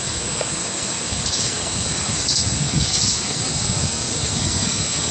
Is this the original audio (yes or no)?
no